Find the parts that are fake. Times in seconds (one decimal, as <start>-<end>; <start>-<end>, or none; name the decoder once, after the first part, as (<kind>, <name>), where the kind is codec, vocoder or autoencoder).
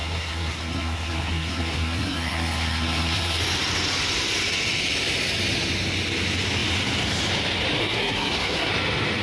0.0-3.4 (codec, SNAC); 7.8-8.7